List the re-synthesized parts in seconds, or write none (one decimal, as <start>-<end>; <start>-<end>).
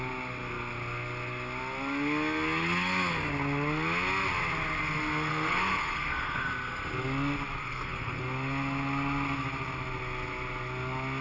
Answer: 5.3-6.5; 7.6-8.2